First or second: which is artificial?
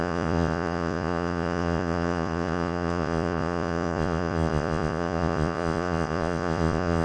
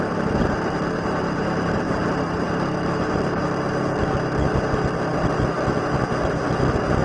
first